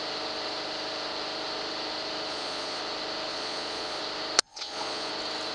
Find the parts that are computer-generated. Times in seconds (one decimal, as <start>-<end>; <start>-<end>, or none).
2.3-2.8; 3.3-4.0; 4.5-5.1